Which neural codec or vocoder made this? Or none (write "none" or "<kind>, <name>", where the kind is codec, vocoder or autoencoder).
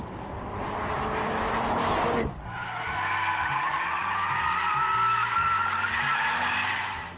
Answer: none